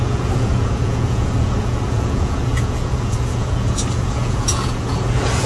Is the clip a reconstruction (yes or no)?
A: yes